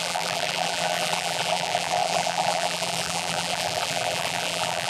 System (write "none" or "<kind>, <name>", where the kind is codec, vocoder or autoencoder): vocoder, BigVGAN v2